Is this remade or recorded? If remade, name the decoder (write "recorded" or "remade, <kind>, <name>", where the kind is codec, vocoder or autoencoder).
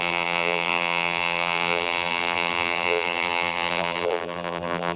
remade, vocoder, BigVGAN v2